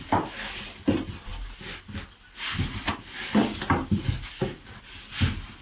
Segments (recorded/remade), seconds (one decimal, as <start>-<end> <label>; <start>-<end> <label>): 0.0-5.6 recorded